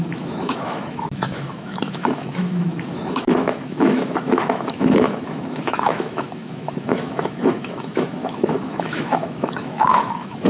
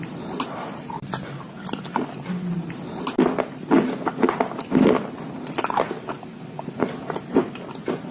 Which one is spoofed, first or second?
first